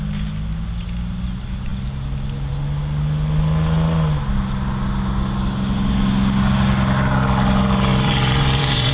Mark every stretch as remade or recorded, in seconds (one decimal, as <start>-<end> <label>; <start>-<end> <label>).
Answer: 0.0-7.9 recorded; 7.9-8.9 remade

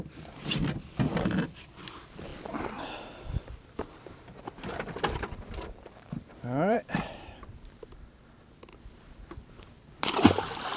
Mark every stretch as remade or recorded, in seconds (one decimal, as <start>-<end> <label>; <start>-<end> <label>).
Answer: 0.0-3.8 recorded; 3.8-8.2 remade; 8.2-10.8 recorded

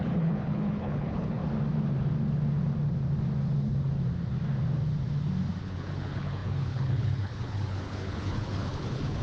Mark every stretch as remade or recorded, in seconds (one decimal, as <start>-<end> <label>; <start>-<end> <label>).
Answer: 0.0-1.4 remade; 1.4-5.6 recorded; 5.6-9.2 remade

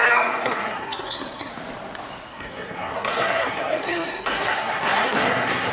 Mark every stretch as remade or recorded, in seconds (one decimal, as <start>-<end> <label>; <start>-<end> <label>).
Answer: 0.0-1.5 remade; 1.5-2.3 recorded; 2.3-5.7 remade

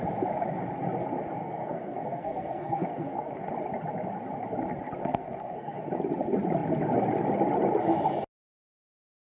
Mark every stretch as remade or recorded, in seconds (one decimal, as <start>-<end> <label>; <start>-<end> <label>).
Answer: 0.0-1.4 recorded; 1.4-3.3 remade; 3.3-5.0 recorded; 5.0-5.8 remade; 5.8-9.2 recorded

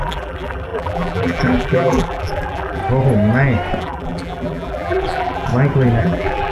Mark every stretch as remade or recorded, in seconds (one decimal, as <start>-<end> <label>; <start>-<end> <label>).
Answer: 0.0-2.8 remade; 2.8-3.8 recorded; 3.8-5.5 remade; 5.5-6.0 recorded; 6.0-6.5 remade

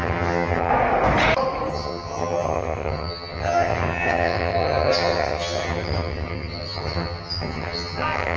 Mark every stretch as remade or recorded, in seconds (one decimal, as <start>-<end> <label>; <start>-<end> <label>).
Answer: 0.0-0.7 remade; 0.7-1.7 recorded; 1.7-8.4 remade